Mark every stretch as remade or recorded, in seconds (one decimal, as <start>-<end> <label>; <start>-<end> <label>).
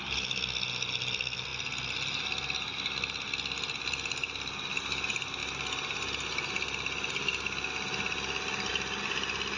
0.0-9.6 recorded